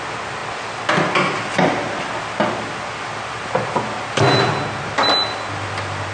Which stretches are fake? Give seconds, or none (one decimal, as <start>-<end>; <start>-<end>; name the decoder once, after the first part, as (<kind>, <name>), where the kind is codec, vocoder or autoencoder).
none